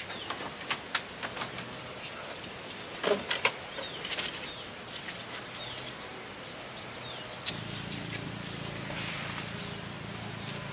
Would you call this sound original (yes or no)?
yes